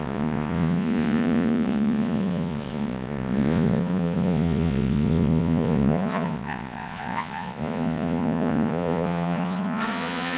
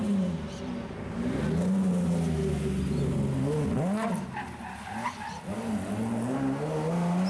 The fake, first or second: first